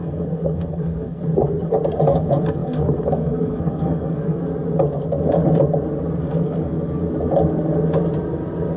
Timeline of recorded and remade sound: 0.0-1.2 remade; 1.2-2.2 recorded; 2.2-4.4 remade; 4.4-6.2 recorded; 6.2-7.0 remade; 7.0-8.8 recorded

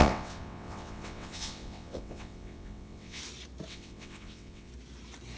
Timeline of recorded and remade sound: 0.0-3.2 remade; 3.2-3.7 recorded; 3.7-4.7 remade; 4.7-5.4 recorded

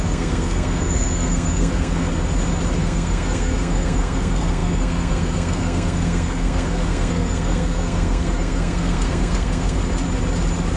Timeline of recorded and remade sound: 0.0-2.1 remade; 2.1-2.8 recorded; 2.8-9.8 remade; 9.8-10.8 recorded